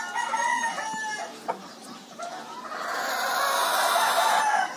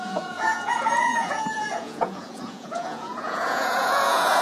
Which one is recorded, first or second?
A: first